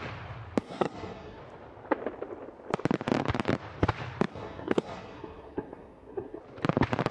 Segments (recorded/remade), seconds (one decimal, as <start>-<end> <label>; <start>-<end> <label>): 0.0-0.6 recorded; 0.6-1.4 remade; 1.4-4.3 recorded; 4.3-6.4 remade; 6.4-7.1 recorded